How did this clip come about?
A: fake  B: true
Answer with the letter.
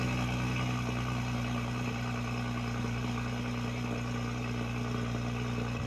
B